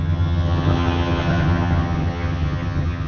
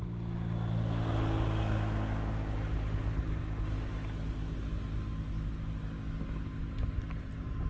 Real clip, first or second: second